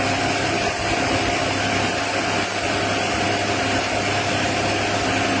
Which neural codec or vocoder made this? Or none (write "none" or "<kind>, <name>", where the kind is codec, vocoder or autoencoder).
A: none